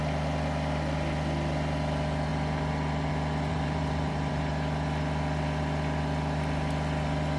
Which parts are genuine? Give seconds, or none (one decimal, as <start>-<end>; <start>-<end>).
0.0-3.5; 4.4-7.4